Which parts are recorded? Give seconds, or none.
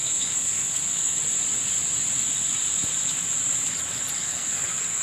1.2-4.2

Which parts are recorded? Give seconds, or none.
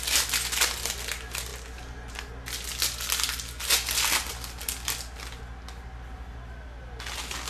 0.0-7.5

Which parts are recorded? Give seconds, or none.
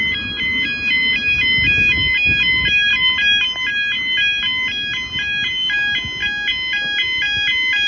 0.0-7.9